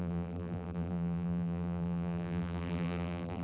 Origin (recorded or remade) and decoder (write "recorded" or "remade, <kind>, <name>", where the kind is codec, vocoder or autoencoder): remade, vocoder, BigVGAN v2